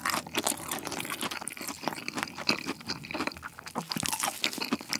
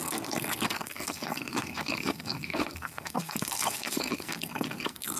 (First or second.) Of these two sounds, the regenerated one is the second